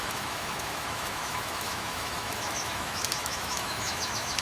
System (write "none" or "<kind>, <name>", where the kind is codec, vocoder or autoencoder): autoencoder, DAC-VAE